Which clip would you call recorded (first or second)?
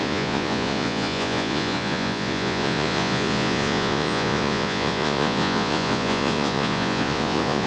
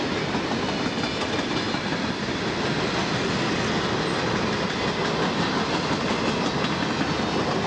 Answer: second